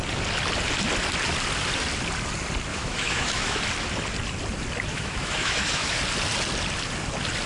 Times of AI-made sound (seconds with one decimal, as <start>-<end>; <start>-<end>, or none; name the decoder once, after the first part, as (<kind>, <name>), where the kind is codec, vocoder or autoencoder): 2.7-3.6 (autoencoder, DAC-VAE); 4.9-6.0